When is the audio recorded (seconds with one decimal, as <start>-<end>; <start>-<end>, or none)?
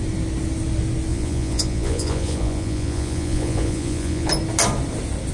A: 0.0-1.1; 4.3-5.3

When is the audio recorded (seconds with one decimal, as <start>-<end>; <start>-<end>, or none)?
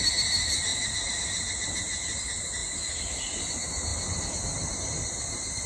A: 0.0-0.7; 1.2-5.7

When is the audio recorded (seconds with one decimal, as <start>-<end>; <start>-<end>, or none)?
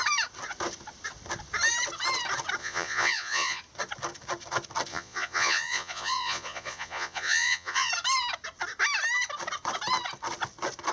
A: 0.0-2.6; 3.6-4.9; 7.9-10.9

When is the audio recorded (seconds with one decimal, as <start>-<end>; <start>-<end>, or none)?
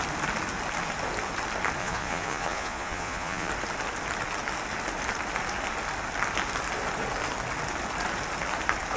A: 0.0-1.8; 3.5-9.0